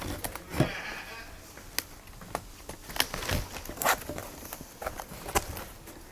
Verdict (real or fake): real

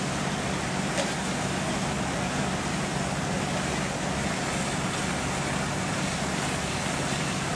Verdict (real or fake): real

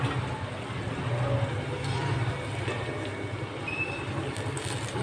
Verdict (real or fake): real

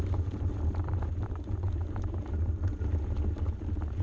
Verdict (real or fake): fake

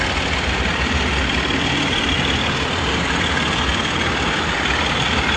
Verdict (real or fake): fake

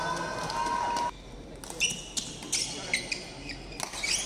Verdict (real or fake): real